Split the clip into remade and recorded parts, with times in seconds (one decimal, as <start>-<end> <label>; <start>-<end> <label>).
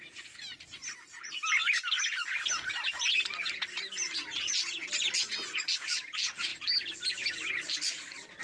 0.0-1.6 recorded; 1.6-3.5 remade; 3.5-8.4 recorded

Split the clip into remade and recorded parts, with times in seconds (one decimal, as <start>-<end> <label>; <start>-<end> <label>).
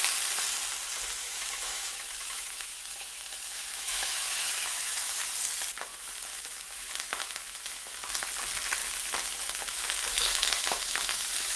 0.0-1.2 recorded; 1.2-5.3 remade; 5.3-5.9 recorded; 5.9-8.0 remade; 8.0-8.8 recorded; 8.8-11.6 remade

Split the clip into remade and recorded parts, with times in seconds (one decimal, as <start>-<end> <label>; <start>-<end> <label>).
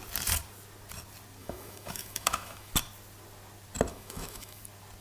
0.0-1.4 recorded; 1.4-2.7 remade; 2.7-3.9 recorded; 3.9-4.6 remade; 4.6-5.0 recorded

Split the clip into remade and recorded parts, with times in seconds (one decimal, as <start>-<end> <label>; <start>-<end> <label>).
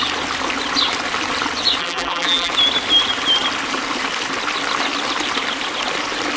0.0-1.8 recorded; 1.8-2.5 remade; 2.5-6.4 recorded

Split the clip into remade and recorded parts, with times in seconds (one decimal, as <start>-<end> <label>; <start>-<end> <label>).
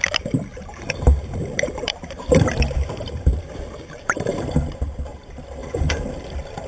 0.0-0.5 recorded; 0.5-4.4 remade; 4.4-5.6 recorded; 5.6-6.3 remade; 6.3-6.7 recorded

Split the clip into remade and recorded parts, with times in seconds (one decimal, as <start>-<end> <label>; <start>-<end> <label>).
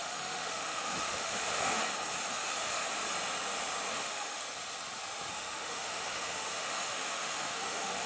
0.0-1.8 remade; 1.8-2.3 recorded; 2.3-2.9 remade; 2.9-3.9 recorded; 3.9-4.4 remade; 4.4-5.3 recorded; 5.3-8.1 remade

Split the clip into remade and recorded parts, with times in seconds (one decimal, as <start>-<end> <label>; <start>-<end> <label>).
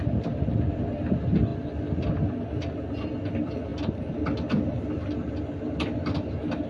0.0-3.7 recorded; 3.7-5.3 remade; 5.3-6.7 recorded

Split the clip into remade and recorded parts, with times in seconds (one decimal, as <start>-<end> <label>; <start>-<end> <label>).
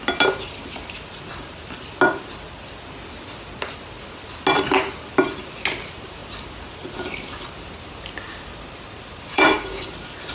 0.0-9.3 recorded; 9.3-9.9 remade; 9.9-10.3 recorded